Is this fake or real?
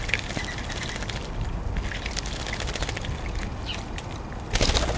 real